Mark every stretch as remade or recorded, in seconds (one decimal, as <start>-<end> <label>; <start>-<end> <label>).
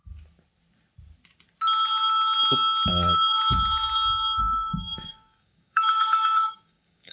0.0-2.9 recorded; 2.9-3.4 remade; 3.4-4.4 recorded; 4.4-7.1 remade